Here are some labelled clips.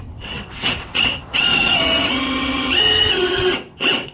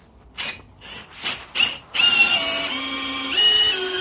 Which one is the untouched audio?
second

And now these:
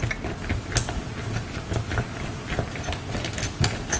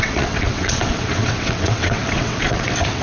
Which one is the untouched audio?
first